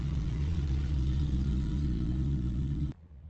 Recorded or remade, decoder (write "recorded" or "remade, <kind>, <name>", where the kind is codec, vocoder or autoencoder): remade, vocoder, Vocos